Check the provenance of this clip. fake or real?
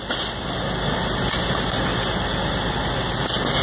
real